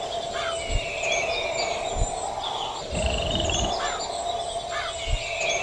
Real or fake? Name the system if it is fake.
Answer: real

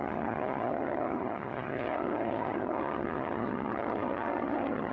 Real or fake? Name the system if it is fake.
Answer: fake, vocoder, HiFi-GAN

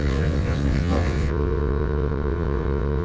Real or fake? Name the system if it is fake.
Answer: fake, vocoder, WaveNeXt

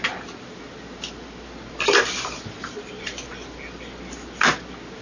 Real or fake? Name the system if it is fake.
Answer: real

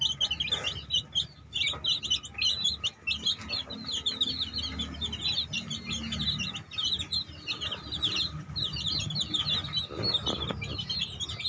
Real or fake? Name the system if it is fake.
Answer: real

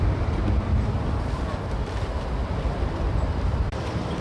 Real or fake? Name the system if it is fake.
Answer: fake, vocoder, BigVGAN v2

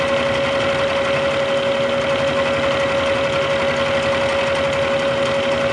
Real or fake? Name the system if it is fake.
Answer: real